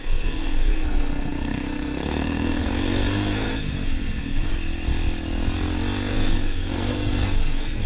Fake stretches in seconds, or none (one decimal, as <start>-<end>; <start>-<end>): 0.0-4.5; 6.1-7.9